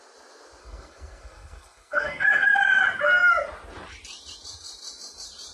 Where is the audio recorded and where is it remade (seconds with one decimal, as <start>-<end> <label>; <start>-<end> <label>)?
0.0-0.6 recorded; 0.6-2.8 remade; 2.8-5.5 recorded